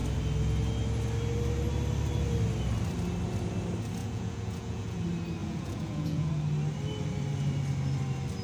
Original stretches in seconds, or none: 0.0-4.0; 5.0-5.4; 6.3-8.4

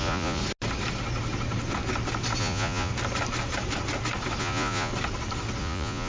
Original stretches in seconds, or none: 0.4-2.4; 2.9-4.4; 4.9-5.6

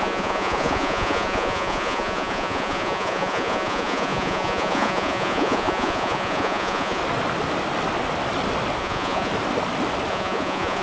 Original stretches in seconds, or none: 7.0-8.8; 9.3-10.1

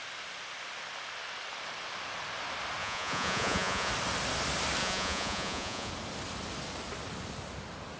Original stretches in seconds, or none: 0.0-2.8; 3.9-4.8; 5.9-8.0

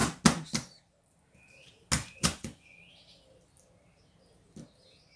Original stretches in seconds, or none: 0.0-2.0; 2.8-5.2